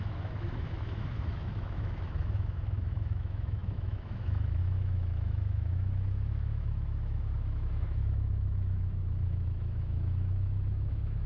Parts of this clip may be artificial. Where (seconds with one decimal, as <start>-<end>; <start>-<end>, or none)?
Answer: 0.0-11.3